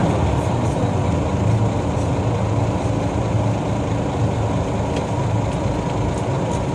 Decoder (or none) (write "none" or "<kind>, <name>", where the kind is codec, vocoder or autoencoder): none